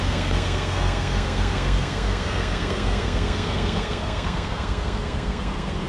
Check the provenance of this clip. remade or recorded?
remade